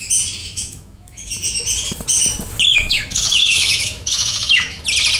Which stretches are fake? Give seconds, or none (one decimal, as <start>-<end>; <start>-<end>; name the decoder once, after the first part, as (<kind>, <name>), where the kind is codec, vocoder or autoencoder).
0.4-1.3 (autoencoder, DAC-VAE); 2.7-4.8